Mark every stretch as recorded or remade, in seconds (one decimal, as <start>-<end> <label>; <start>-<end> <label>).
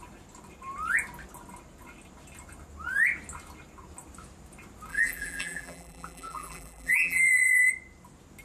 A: 0.0-4.9 recorded; 4.9-7.7 remade; 7.7-8.4 recorded